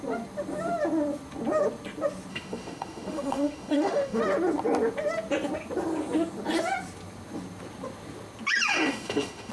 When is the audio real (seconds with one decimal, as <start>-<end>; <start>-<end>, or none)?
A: 0.0-2.3; 4.2-8.7

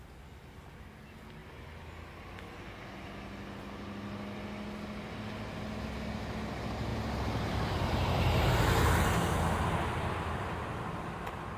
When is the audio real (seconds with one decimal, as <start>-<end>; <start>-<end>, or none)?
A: 0.0-6.9; 8.5-11.6

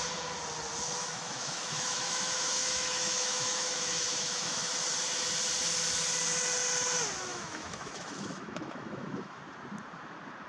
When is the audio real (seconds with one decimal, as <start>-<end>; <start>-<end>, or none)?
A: 0.0-1.0; 4.7-7.3; 9.4-10.5

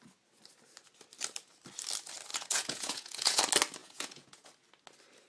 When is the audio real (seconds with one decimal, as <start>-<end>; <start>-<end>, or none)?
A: 0.0-2.3; 3.4-3.8; 4.5-5.3

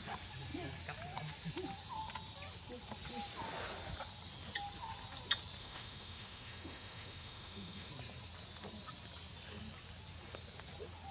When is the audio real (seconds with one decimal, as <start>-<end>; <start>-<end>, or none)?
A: 0.0-5.6; 7.9-11.1

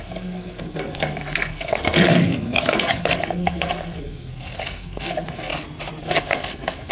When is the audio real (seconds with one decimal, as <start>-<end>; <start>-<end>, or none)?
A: 5.5-6.0

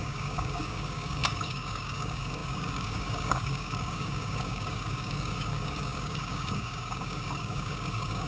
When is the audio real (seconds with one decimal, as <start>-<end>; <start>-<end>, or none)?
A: none